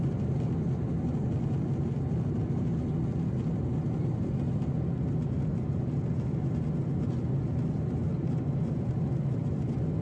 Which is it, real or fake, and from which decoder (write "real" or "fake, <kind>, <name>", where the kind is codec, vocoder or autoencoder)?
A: real